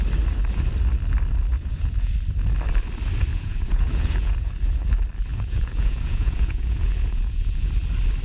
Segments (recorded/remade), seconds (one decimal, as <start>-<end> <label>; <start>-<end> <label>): 0.0-1.5 recorded; 1.5-2.1 remade; 2.1-3.3 recorded; 3.3-4.5 remade; 4.5-5.3 recorded; 5.3-7.7 remade; 7.7-8.2 recorded